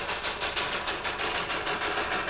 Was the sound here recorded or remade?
recorded